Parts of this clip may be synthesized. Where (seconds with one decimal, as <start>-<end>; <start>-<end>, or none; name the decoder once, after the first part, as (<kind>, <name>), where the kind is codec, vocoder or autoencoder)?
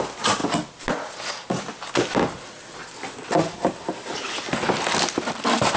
none